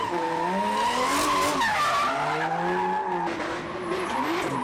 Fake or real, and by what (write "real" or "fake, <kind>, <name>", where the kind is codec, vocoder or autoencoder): real